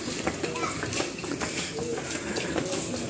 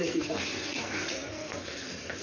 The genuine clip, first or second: first